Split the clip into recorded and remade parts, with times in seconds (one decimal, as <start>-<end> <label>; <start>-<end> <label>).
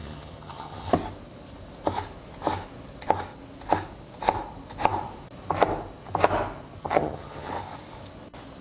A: 0.0-0.9 remade; 0.9-6.8 recorded; 6.8-7.5 remade; 7.5-8.6 recorded